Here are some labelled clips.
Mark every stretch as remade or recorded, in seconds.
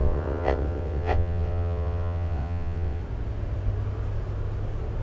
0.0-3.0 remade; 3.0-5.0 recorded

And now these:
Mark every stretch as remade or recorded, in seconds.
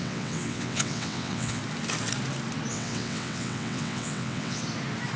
0.0-1.6 remade; 1.6-2.7 recorded; 2.7-4.6 remade; 4.6-5.2 recorded